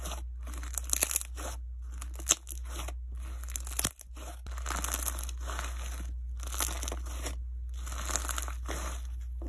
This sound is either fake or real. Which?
real